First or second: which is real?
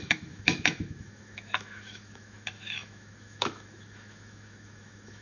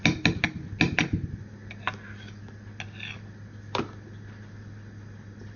second